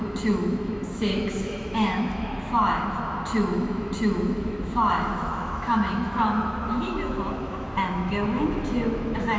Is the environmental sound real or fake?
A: fake